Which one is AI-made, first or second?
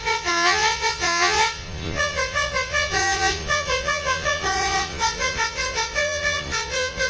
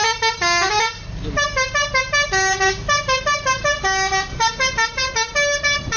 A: first